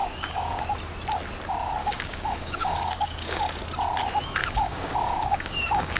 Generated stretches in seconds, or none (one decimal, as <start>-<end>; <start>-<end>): 0.0-0.6; 1.8-3.4; 4.4-6.0